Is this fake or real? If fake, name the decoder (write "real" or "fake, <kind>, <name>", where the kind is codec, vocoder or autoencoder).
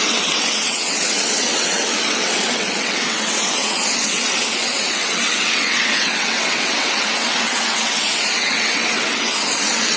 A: fake, vocoder, WaveNeXt